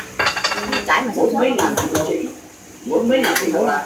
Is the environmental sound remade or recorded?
recorded